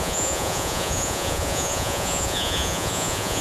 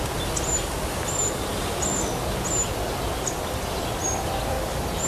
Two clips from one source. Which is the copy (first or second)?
first